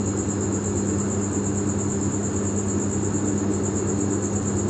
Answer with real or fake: real